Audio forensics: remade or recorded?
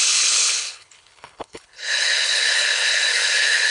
remade